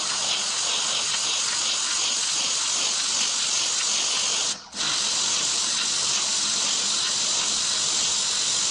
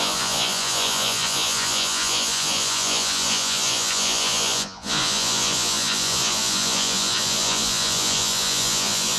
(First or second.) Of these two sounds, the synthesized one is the second